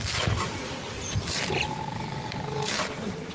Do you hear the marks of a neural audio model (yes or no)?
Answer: yes